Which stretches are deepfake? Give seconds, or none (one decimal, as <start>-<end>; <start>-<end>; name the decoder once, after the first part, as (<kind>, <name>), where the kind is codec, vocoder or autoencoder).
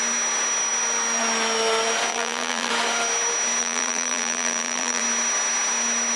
2.1-2.7 (vocoder, BigVGAN v2); 3.6-5.0